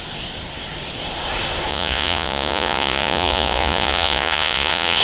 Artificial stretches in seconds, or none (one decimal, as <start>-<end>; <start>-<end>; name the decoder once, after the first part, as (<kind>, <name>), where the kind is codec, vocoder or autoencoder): 1.7-5.0 (vocoder, Vocos)